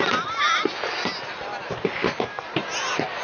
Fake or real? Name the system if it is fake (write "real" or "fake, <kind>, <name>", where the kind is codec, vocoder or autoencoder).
real